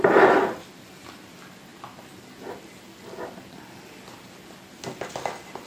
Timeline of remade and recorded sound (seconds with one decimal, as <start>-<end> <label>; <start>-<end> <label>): 0.0-5.7 recorded